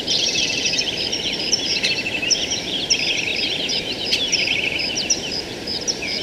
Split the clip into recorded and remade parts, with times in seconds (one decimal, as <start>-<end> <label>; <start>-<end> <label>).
0.0-6.2 remade